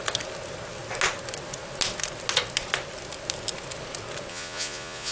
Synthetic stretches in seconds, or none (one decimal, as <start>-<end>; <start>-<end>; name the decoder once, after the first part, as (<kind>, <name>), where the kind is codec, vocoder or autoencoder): 4.3-5.1 (vocoder, Vocos)